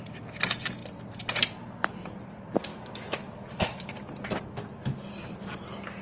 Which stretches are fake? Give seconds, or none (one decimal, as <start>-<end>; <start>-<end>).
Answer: 2.7-3.9